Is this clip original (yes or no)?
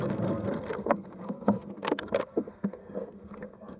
no